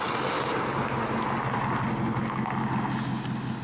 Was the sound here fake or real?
real